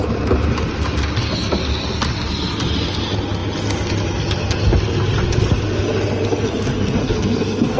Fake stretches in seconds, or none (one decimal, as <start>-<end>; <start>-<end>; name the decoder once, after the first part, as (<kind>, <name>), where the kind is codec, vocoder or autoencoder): 7.0-7.8 (codec, SNAC)